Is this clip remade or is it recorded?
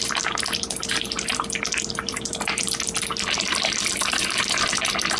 remade